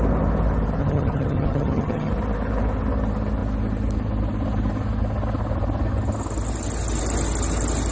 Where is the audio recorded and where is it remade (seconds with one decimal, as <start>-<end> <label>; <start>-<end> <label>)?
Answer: 0.0-0.8 recorded; 0.8-2.1 remade; 2.1-7.9 recorded